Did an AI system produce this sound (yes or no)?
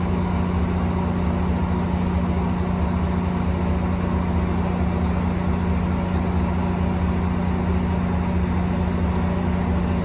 no